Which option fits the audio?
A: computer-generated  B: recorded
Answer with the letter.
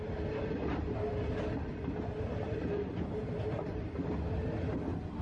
B